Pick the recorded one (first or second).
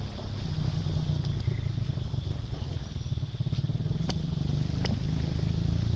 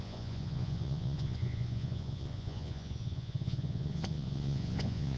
first